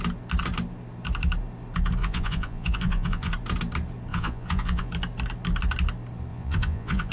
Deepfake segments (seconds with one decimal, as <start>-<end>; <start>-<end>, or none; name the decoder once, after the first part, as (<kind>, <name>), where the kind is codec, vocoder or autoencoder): 2.0-3.3 (vocoder, Vocos); 4.1-4.9; 6.3-7.1